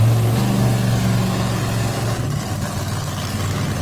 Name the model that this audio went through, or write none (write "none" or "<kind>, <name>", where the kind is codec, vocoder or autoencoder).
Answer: none